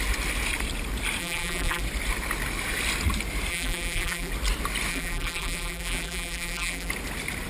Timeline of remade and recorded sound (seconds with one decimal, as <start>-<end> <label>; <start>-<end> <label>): 0.0-1.2 recorded; 1.2-1.8 remade; 1.8-3.5 recorded; 3.5-4.3 remade; 4.3-4.9 recorded; 4.9-6.9 remade; 6.9-7.5 recorded